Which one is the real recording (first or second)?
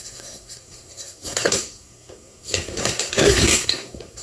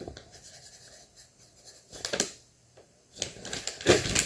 second